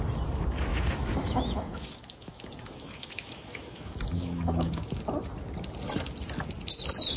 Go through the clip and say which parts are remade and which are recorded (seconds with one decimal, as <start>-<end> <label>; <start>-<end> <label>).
0.0-0.7 recorded; 0.7-5.0 remade; 5.0-7.2 recorded